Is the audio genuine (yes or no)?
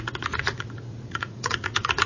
no